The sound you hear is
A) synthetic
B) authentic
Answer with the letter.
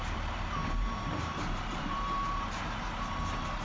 A